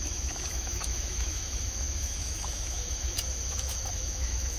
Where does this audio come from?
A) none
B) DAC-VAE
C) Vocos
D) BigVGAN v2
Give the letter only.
B